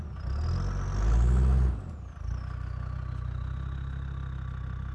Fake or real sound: real